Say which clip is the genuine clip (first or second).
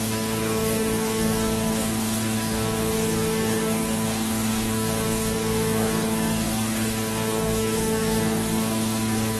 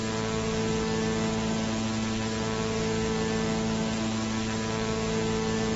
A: second